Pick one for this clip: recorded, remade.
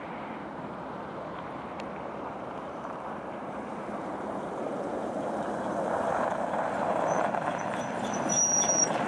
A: remade